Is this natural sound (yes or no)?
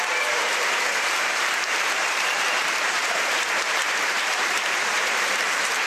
no